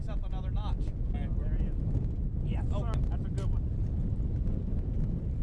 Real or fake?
real